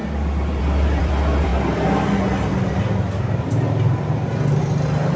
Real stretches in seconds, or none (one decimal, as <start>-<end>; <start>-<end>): 0.0-0.6; 1.5-4.6